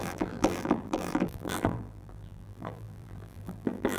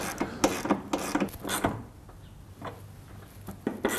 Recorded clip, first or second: second